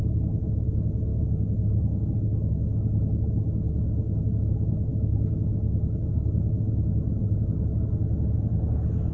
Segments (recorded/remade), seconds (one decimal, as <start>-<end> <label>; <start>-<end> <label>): 0.0-1.1 recorded; 1.1-2.1 remade; 2.1-9.1 recorded